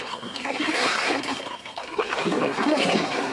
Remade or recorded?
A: remade